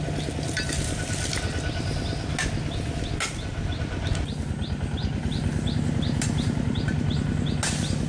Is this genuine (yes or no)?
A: yes